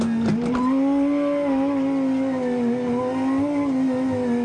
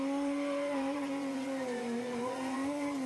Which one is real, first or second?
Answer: first